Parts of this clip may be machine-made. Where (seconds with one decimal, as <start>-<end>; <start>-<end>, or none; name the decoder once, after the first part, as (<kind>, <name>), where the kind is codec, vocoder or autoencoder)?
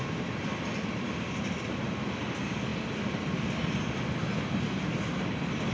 none